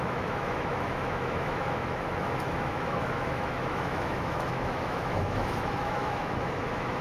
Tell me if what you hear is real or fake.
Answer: fake